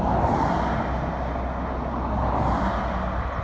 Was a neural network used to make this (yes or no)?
no